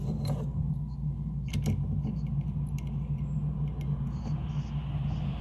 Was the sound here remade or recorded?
recorded